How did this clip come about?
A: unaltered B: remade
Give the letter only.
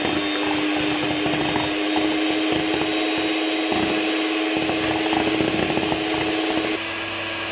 A